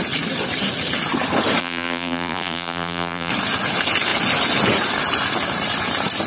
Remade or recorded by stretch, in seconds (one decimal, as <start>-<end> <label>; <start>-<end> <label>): 0.0-1.6 recorded; 1.6-3.3 remade; 3.3-6.3 recorded